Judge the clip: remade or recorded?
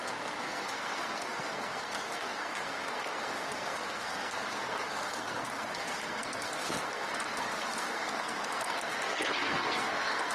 remade